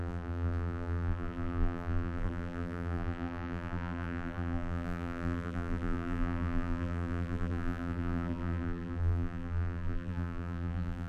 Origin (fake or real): fake